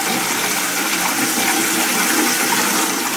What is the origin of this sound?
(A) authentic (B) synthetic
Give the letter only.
A